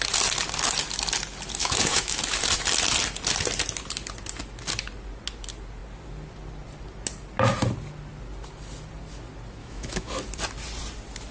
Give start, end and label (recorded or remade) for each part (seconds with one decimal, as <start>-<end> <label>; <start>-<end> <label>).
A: 0.0-1.6 recorded; 1.6-2.2 remade; 2.2-9.6 recorded; 9.6-10.1 remade; 10.1-11.3 recorded